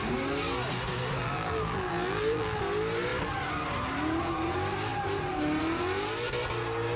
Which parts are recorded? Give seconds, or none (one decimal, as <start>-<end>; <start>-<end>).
0.0-1.2; 2.6-7.0